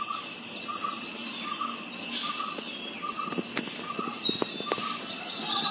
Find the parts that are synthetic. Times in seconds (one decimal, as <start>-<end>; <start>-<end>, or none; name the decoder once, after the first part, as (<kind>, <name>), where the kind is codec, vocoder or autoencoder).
none